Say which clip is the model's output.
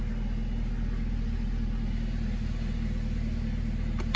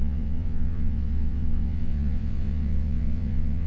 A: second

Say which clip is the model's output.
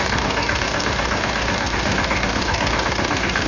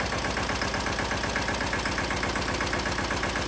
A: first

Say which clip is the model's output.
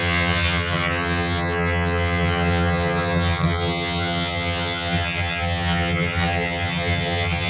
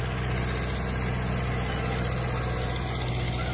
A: first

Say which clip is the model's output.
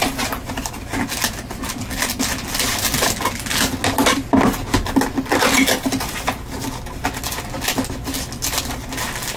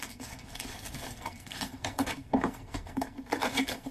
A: second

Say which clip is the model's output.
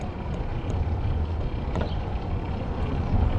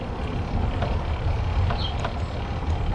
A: first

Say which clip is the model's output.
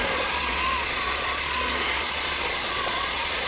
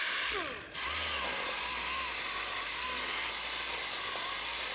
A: first